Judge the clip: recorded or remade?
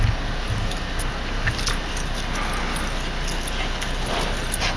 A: recorded